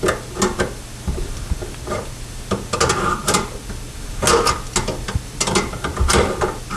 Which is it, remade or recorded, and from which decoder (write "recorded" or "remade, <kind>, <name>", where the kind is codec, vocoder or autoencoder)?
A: recorded